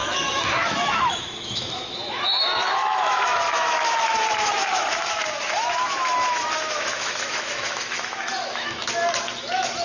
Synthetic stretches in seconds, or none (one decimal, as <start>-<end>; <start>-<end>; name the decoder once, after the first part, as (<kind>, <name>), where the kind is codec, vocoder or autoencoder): 0.0-8.8 (autoencoder, DAC-VAE); 9.4-9.8